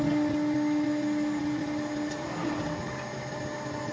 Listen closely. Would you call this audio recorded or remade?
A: recorded